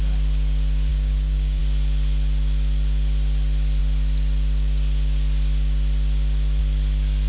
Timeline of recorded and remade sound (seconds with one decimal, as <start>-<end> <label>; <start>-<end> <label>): 0.0-0.9 recorded; 0.9-1.6 remade; 1.6-7.3 recorded